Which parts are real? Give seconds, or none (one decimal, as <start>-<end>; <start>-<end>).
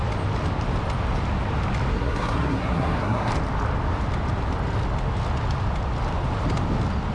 0.0-1.9; 3.3-7.1